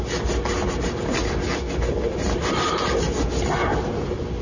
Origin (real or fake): real